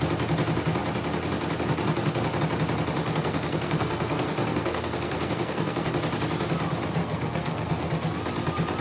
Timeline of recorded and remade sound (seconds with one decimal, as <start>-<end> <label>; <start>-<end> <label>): 0.0-3.0 recorded; 3.0-5.9 remade; 5.9-7.0 recorded; 7.0-7.9 remade; 7.9-8.8 recorded